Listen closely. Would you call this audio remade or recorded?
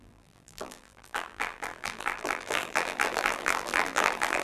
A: remade